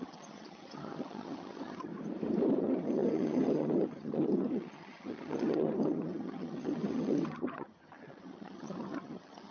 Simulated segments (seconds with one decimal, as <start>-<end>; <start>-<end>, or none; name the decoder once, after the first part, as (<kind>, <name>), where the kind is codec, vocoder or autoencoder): 0.0-1.9 (vocoder, HiFi-GAN); 2.6-9.5